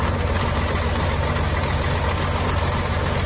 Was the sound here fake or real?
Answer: real